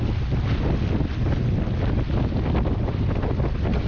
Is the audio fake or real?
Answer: real